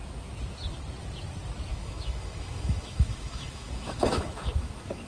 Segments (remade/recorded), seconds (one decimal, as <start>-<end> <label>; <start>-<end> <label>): 0.0-1.7 recorded; 1.7-5.1 remade